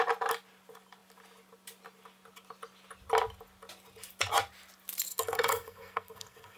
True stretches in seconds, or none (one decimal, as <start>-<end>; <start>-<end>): 0.0-5.1